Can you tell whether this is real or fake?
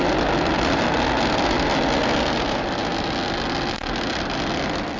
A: real